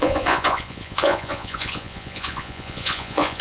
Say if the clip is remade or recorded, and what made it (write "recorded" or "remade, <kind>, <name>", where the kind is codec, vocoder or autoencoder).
remade, vocoder, Vocos